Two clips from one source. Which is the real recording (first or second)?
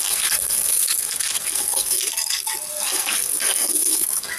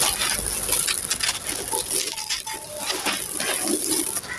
second